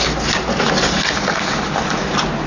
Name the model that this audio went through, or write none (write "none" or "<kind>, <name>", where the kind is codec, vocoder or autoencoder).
none